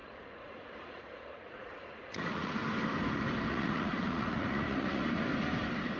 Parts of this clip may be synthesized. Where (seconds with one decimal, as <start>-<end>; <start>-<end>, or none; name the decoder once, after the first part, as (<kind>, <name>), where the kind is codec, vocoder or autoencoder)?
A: 0.0-2.6 (vocoder, Vocos); 3.5-5.3